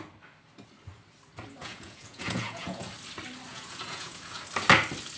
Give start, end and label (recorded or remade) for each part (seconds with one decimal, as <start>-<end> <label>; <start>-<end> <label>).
0.0-1.6 recorded; 1.6-2.9 remade; 2.9-3.5 recorded; 3.5-4.4 remade; 4.4-5.2 recorded